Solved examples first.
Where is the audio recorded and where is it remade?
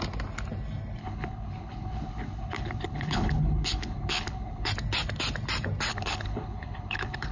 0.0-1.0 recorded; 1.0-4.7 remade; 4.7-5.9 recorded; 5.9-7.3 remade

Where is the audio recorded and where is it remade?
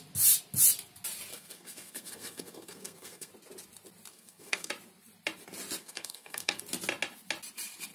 0.0-1.3 recorded; 1.3-3.3 remade; 3.3-4.1 recorded; 4.1-4.7 remade; 4.7-5.8 recorded; 5.8-6.6 remade; 6.6-7.9 recorded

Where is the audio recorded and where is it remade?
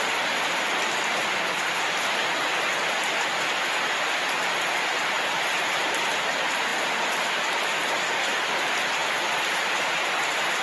0.0-10.6 recorded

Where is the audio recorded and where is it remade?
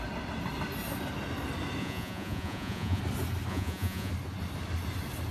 0.0-1.8 recorded; 1.8-3.0 remade; 3.0-3.5 recorded; 3.5-4.1 remade; 4.1-5.3 recorded